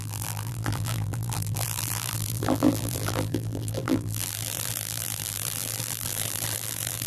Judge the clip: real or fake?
fake